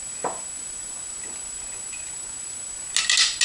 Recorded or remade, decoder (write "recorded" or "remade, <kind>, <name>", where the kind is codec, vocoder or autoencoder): recorded